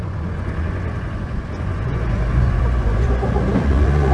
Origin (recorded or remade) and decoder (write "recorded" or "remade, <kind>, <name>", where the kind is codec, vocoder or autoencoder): remade, vocoder, Vocos